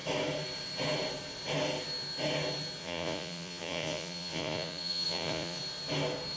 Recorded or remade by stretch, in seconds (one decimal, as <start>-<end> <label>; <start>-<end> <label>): 0.0-2.8 recorded; 2.8-5.6 remade; 5.6-6.4 recorded